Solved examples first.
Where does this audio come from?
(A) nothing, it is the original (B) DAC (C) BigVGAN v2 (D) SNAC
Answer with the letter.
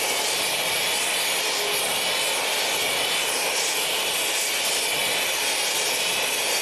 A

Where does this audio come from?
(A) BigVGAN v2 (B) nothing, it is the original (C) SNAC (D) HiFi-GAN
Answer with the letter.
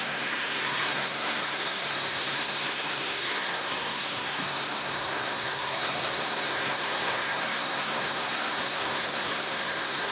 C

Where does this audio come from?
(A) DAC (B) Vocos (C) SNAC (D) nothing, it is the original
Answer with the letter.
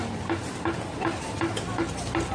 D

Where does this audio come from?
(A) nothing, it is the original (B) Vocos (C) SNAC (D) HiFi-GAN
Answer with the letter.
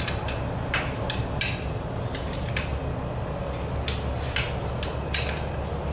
A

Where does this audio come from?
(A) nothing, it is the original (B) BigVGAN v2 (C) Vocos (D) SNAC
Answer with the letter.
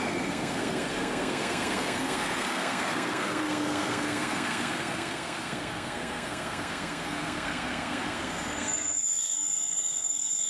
D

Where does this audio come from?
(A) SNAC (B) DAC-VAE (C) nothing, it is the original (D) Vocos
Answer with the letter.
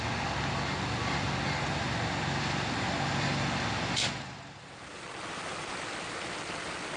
C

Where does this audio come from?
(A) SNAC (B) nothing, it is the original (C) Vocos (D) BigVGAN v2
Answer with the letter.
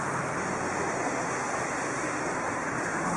B